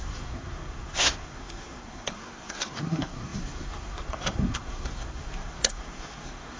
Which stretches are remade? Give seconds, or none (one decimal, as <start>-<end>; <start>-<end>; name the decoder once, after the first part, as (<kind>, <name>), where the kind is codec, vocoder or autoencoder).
0.0-6.6 (codec, SNAC)